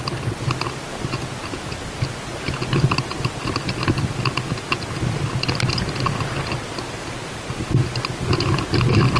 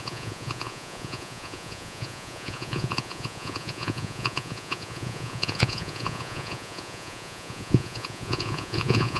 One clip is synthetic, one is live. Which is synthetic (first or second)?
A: second